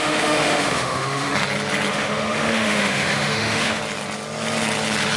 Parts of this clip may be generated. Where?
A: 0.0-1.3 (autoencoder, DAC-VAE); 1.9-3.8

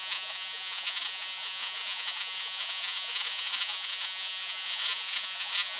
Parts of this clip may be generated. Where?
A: 0.0-5.8 (vocoder, Vocos)

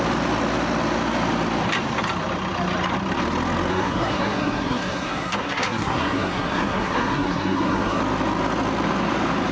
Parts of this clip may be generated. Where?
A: 3.7-8.0 (codec, SNAC)

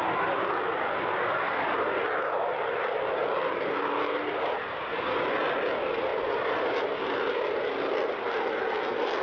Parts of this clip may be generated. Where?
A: none

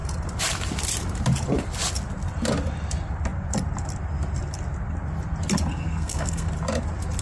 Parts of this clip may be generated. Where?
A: 5.7-6.5 (codec, SNAC)

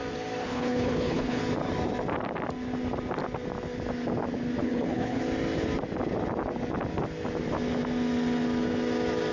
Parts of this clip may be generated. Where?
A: 0.4-1.4 (codec, HILCodec); 4.6-5.2